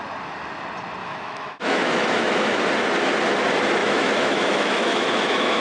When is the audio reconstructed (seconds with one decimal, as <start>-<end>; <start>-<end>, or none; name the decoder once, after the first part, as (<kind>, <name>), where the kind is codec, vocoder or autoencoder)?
1.0-2.6 (autoencoder, DAC-VAE); 3.8-5.6